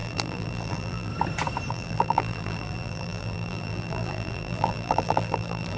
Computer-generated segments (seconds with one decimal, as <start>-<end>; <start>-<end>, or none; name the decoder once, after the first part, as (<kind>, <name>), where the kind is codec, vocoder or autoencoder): 0.0-1.1 (vocoder, BigVGAN v2); 1.7-5.8